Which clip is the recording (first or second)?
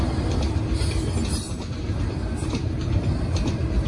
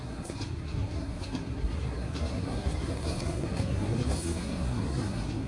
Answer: first